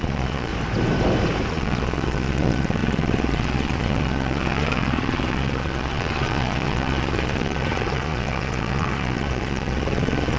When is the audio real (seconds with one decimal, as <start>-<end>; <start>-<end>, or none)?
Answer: 0.5-1.5